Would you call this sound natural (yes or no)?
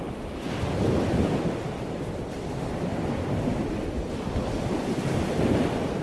yes